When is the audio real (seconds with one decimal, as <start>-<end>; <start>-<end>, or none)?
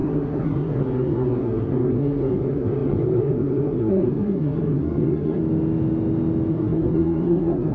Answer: 5.4-6.5